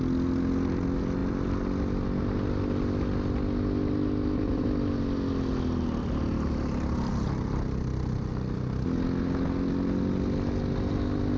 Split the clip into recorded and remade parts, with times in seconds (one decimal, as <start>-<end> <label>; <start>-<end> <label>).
0.0-11.4 recorded